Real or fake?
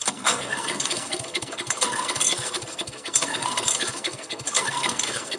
fake